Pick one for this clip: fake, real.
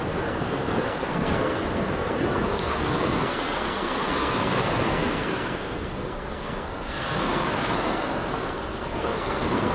fake